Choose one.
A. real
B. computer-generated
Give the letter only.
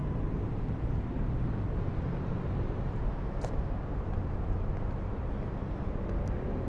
A